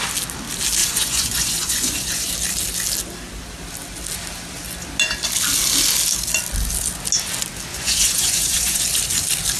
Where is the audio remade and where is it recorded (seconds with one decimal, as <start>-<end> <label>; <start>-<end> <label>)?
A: 0.0-0.8 recorded; 0.8-2.3 remade; 2.3-7.7 recorded; 7.7-8.8 remade; 8.8-9.6 recorded